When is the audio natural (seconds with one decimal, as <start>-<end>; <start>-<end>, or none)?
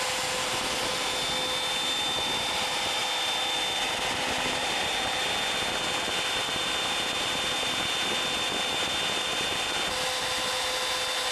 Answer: 0.0-11.3